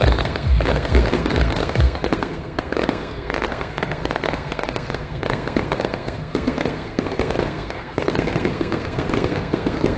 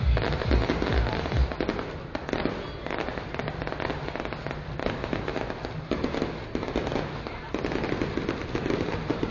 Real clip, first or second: second